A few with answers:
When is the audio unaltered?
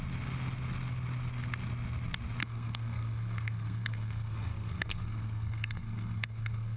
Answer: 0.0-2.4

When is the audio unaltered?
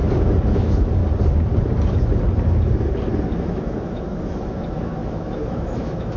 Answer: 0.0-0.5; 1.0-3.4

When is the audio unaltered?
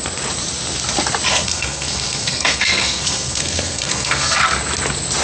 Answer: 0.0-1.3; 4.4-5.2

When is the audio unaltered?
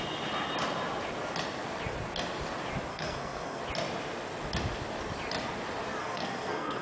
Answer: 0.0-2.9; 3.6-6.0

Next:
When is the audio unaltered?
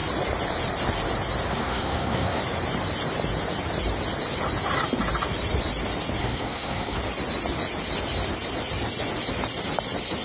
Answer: 0.0-1.5; 2.4-6.2; 7.0-10.2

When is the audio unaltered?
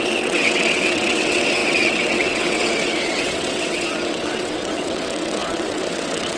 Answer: none